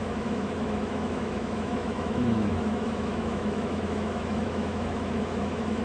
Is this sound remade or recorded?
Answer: remade